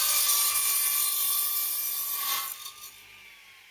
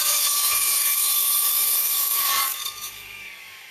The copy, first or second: second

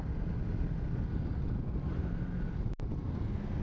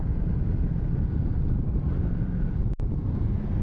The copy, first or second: second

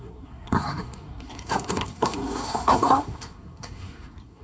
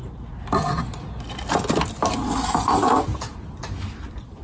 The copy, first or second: first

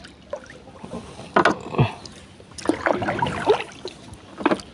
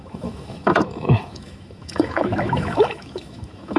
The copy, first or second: second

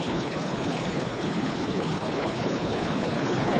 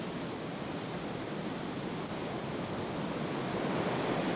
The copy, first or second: first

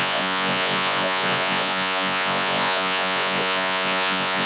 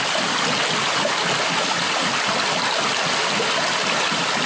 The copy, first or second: first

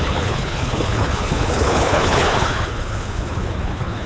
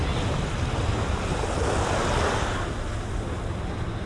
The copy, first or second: first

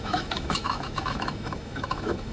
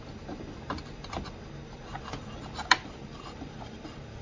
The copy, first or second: first